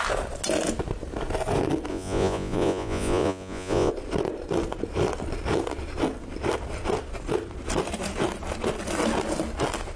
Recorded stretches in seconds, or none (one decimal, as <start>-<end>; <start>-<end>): 0.0-1.9; 3.9-10.0